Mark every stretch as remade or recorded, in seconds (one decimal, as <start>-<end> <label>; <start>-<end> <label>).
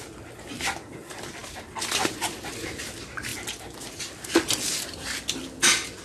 0.0-6.0 recorded